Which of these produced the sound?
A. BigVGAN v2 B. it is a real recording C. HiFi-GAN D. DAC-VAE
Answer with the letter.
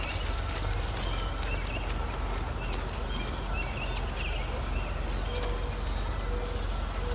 B